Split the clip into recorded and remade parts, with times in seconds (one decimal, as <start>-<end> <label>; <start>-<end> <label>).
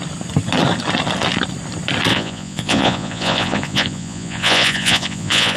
0.0-2.1 recorded; 2.1-5.6 remade